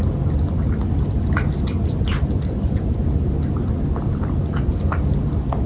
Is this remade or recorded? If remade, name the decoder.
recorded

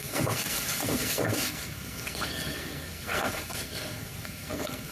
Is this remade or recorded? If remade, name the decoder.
remade, codec, SNAC